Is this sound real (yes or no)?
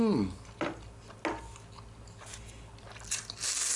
yes